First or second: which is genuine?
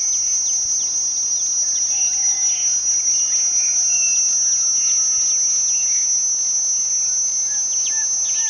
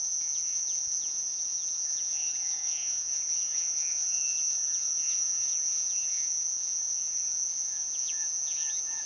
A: first